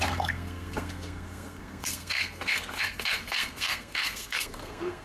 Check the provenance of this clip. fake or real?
fake